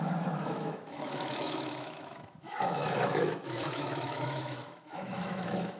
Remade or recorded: remade